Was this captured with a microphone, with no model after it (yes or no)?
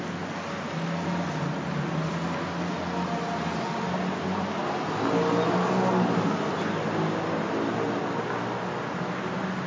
yes